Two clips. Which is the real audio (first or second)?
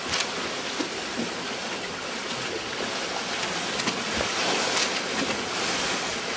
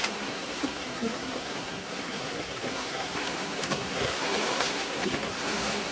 first